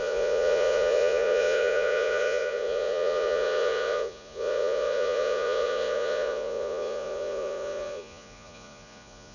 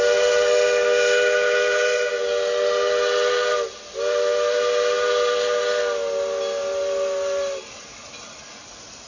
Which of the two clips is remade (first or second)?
first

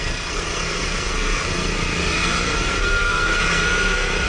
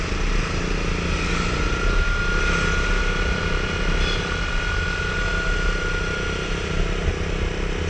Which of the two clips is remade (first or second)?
first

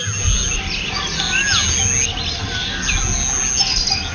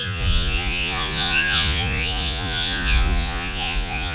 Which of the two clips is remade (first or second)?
second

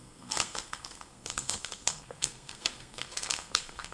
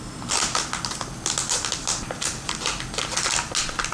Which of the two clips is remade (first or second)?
first